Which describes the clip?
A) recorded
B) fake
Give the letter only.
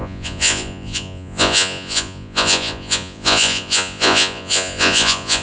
B